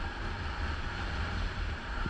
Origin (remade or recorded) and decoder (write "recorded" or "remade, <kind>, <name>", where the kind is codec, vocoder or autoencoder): remade, vocoder, BigVGAN v2